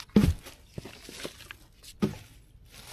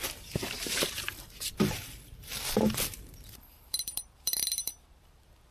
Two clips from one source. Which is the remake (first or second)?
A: second